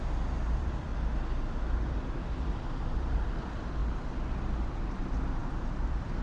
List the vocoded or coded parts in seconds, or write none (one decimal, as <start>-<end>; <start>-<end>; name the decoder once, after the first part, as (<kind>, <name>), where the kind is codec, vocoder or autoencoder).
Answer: 0.0-0.9 (vocoder, BigVGAN v2); 1.9-6.2